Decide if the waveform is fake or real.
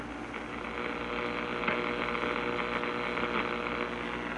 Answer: real